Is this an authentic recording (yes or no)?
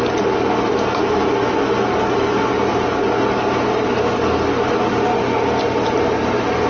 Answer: yes